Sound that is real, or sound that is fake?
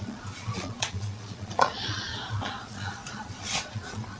fake